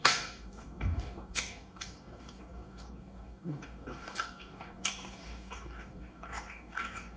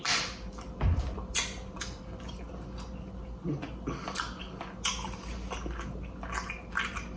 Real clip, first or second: second